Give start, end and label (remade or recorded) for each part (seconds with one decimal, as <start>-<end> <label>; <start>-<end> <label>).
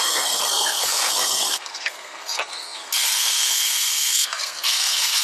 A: 0.0-5.2 remade